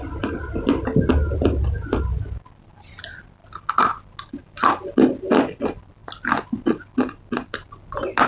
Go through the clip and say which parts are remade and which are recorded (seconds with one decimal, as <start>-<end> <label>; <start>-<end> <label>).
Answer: 0.0-8.3 recorded